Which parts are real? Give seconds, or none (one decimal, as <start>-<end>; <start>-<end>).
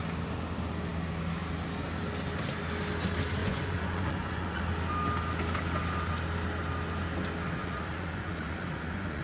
0.0-3.4; 4.6-7.6